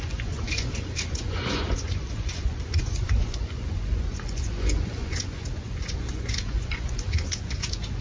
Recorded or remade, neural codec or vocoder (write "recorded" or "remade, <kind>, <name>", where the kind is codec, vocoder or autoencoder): remade, vocoder, Vocos